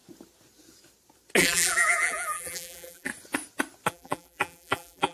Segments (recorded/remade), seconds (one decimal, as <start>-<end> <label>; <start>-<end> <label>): 0.0-1.4 recorded; 1.4-3.1 remade; 3.1-3.9 recorded; 3.9-5.1 remade